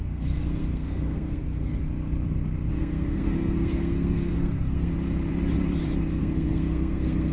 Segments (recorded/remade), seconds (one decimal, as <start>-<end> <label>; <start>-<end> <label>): 0.0-1.7 remade; 1.7-2.8 recorded; 2.8-4.9 remade; 4.9-6.2 recorded; 6.2-7.3 remade